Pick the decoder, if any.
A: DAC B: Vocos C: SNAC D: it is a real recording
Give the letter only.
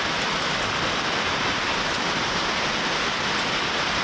D